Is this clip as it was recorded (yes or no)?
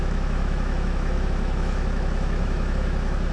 no